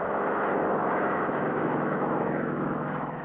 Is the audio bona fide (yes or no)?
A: no